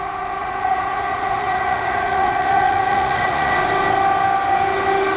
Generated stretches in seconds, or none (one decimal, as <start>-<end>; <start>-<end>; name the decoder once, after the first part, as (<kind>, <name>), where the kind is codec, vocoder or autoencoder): 0.4-3.5 (vocoder, Vocos)